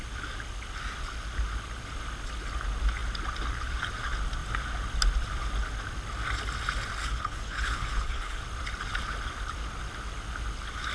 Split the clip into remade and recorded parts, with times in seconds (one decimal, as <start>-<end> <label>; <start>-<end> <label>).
0.0-7.0 recorded; 7.0-8.4 remade; 8.4-10.9 recorded